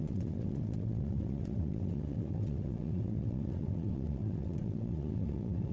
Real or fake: fake